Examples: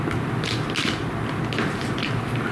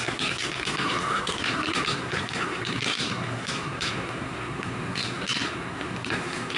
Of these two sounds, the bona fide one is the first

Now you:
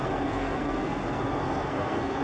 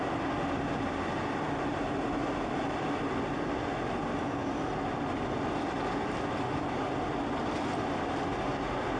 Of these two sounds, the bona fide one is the second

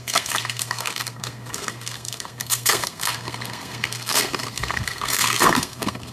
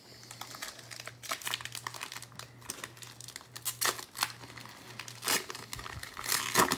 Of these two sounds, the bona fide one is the second